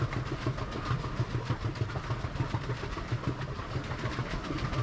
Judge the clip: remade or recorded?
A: recorded